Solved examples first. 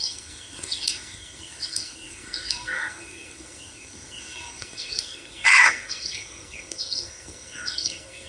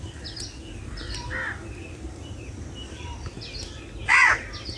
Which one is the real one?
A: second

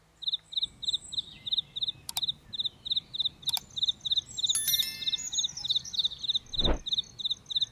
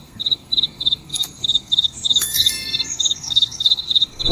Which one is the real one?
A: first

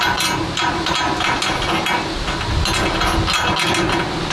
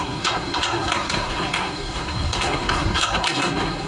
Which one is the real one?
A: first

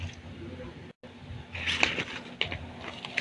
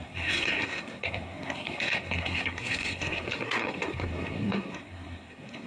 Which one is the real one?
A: first